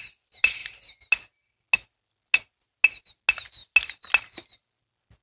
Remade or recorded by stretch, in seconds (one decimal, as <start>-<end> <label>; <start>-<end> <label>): 0.0-5.2 recorded